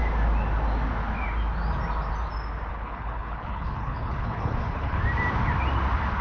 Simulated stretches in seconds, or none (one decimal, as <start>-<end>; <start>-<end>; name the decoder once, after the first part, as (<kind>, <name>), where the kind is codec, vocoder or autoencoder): 2.7-5.0 (codec, HILCodec)